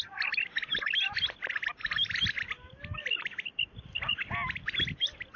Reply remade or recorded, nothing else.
recorded